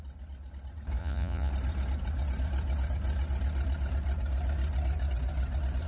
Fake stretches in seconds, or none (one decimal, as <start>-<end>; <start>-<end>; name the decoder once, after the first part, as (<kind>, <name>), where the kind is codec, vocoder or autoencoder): 1.0-1.5 (vocoder, Vocos)